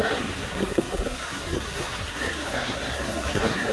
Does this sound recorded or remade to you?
remade